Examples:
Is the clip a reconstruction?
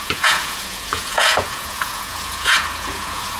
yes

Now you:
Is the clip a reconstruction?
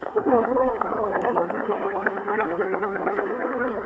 yes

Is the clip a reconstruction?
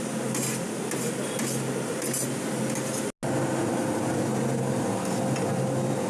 no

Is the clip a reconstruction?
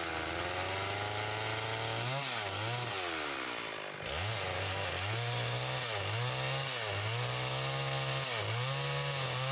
no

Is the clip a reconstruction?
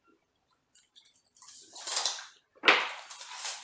no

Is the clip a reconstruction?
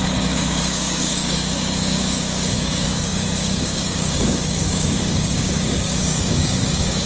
yes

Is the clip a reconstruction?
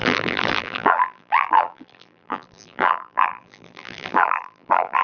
yes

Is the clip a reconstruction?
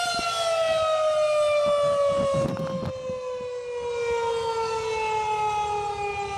no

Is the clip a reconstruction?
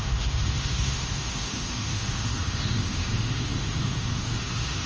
yes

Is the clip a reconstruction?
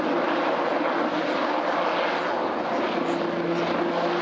no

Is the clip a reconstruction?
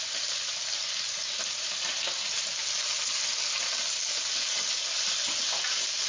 no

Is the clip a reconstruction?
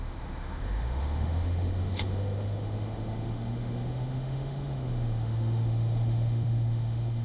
yes